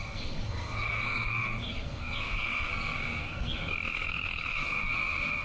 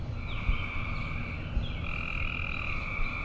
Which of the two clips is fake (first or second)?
first